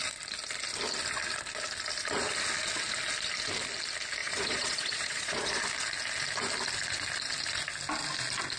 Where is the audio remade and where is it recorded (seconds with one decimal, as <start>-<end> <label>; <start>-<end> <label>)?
0.0-4.2 recorded; 4.2-5.6 remade; 5.6-8.6 recorded

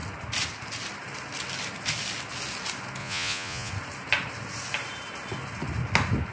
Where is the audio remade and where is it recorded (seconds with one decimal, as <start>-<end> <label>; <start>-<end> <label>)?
0.0-3.0 recorded; 3.0-3.7 remade; 3.7-6.3 recorded

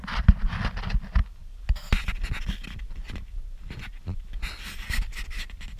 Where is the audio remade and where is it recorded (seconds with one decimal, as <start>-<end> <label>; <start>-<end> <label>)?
0.0-5.8 recorded

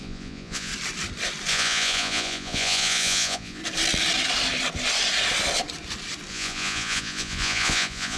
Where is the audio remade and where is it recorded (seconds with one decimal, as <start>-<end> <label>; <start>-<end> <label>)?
0.0-0.7 remade; 0.7-1.5 recorded; 1.5-3.6 remade; 3.6-6.3 recorded; 6.3-8.2 remade